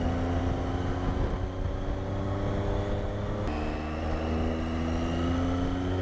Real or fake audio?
real